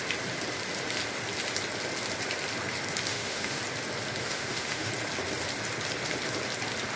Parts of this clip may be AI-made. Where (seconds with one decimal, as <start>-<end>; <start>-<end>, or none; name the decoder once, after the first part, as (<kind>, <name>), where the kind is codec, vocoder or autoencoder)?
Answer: 3.1-3.6 (autoencoder, DAC-VAE); 4.2-4.9